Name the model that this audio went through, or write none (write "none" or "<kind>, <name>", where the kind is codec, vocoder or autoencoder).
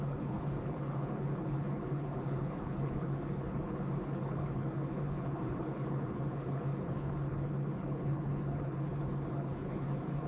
codec, HILCodec